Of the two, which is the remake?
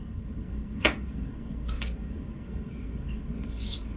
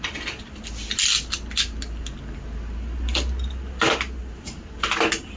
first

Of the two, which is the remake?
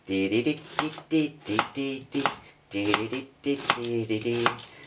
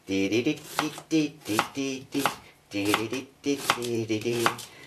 second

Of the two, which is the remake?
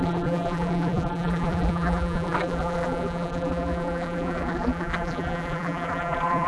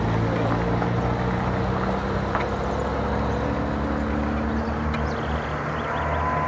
first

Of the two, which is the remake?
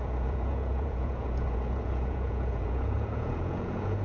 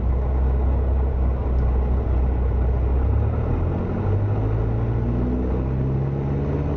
first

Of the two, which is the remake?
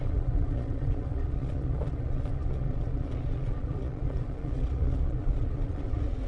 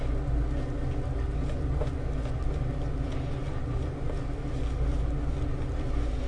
first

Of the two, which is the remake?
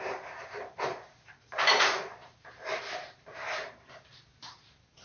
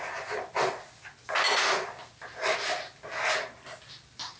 first